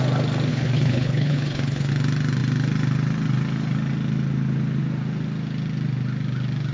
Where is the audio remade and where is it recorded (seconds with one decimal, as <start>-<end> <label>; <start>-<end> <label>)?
0.0-0.5 recorded; 0.5-1.9 remade; 1.9-6.7 recorded